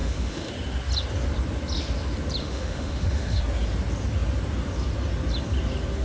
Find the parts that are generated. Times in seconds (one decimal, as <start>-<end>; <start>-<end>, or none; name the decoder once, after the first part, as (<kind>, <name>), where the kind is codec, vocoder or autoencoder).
0.0-0.5 (autoencoder, DAC-VAE); 2.4-3.4